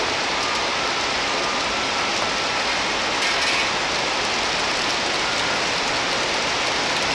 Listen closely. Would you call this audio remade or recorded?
recorded